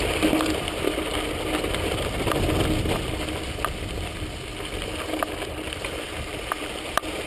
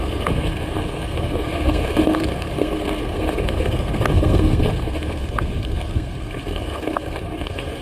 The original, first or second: first